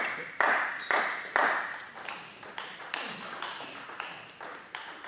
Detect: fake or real fake